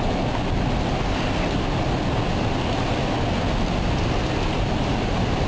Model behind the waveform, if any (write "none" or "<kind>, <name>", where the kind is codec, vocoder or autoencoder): none